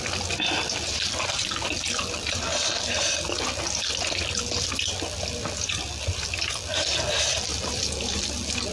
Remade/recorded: remade